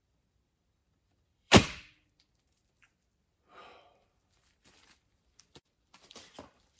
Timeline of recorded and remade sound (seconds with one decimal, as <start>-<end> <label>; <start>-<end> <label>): 0.0-6.8 remade